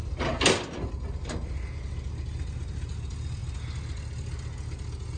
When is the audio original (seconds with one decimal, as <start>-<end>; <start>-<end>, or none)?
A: 0.0-5.2